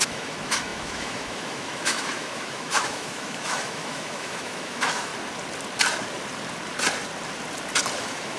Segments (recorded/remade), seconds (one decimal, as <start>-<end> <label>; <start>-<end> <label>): 0.0-5.1 remade; 5.1-8.0 recorded; 8.0-8.4 remade